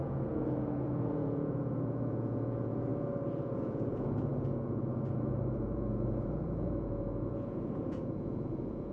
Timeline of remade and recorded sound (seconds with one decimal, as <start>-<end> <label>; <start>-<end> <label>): 0.0-2.9 remade; 2.9-3.6 recorded; 3.6-8.9 remade